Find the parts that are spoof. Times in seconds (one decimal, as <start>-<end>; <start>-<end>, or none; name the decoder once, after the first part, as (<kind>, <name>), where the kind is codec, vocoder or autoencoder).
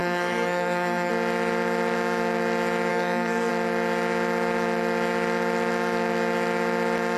0.0-1.1 (codec, SNAC); 2.9-3.5